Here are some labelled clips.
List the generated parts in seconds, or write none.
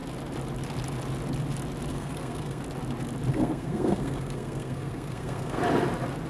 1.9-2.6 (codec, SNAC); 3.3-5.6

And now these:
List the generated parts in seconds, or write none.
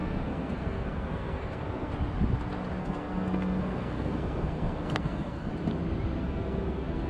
0.0-1.9 (codec, SNAC); 2.8-5.5; 6.2-7.1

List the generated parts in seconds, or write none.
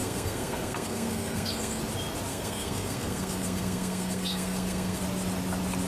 0.0-1.8 (codec, SNAC); 2.3-5.0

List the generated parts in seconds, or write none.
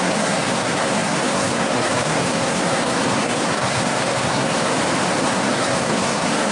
0.0-4.7 (codec, SNAC); 5.2-6.5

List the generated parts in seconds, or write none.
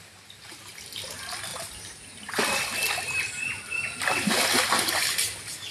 none